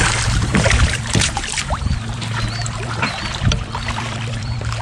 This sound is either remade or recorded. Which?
remade